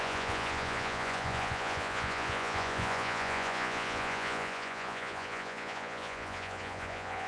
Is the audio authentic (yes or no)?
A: no